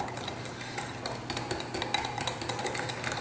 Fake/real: real